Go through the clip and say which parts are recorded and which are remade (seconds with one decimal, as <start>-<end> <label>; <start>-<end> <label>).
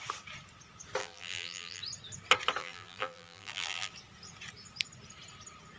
0.0-1.0 recorded; 1.0-1.8 remade; 1.8-2.6 recorded; 2.6-3.9 remade; 3.9-5.8 recorded